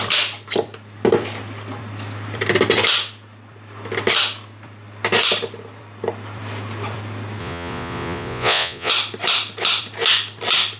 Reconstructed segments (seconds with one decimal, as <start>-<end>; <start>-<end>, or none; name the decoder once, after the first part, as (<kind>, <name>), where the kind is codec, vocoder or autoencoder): 7.4-8.9 (vocoder, Vocos)